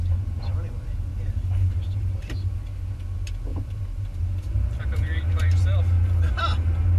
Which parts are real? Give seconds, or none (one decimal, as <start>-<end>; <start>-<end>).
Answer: 0.0-3.5; 6.3-7.0